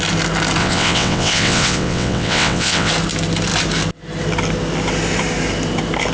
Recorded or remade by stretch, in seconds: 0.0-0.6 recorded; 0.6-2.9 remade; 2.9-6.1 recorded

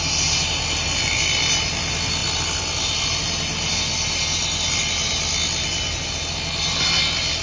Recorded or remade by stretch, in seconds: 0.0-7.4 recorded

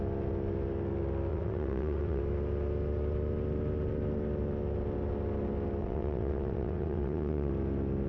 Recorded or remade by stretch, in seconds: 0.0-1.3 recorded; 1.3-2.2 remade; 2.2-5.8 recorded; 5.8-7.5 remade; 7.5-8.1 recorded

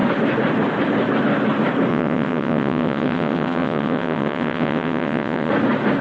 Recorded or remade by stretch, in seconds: 0.0-1.9 recorded; 1.9-5.5 remade; 5.5-6.0 recorded

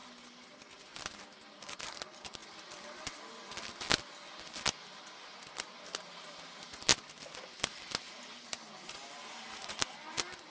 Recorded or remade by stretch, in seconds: 0.0-10.5 recorded

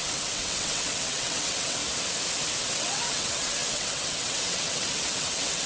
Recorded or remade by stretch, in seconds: 0.0-1.8 remade; 1.8-2.6 recorded; 2.6-5.7 remade

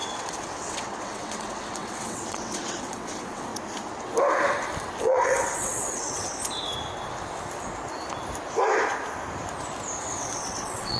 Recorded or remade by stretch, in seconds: 0.0-3.5 remade; 3.5-5.0 recorded; 5.0-6.4 remade; 6.4-10.0 recorded; 10.0-11.0 remade

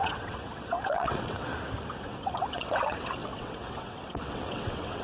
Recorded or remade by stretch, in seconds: 0.0-1.5 remade; 1.5-2.0 recorded; 2.0-5.0 remade